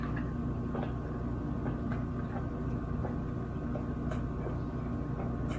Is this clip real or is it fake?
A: real